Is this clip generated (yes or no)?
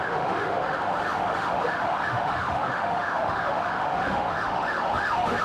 yes